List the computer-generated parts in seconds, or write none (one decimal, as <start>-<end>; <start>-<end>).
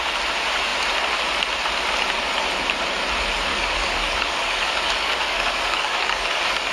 3.5-6.7